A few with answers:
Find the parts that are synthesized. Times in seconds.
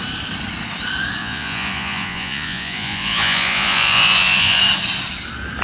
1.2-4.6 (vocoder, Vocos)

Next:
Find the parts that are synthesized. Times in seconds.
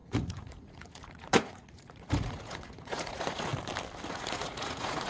0.0-3.5 (vocoder, Vocos); 4.1-5.1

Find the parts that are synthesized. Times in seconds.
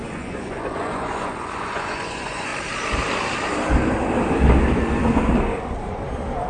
0.0-2.5 (vocoder, Vocos)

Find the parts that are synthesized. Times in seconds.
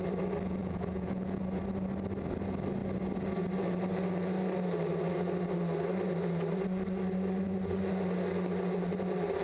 0.6-1.4 (vocoder, Vocos)